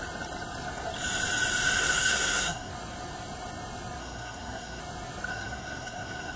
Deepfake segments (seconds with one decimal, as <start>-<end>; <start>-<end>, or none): 1.8-2.7; 4.0-4.8; 5.3-6.4